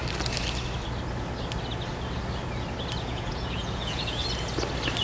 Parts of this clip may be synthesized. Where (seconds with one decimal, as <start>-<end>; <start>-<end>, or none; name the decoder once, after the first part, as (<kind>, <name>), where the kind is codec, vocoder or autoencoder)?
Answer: 3.0-4.2 (vocoder, Vocos)